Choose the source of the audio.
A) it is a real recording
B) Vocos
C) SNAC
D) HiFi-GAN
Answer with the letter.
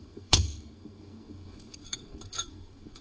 C